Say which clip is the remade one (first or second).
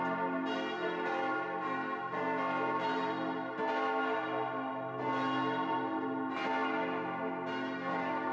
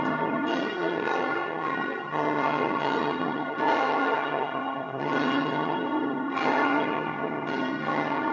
second